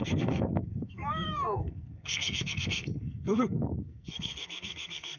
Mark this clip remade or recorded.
remade